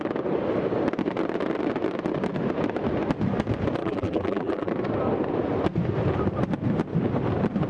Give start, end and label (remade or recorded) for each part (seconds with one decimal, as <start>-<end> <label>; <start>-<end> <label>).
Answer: 0.0-3.8 recorded; 3.8-4.7 remade; 4.7-7.7 recorded